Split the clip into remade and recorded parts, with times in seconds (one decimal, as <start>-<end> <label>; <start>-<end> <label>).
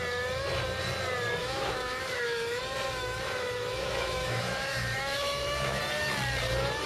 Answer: 0.0-1.4 recorded; 1.4-2.6 remade; 2.6-3.0 recorded; 3.0-5.8 remade; 5.8-6.9 recorded